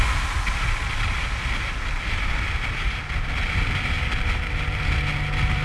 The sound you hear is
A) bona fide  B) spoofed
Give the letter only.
A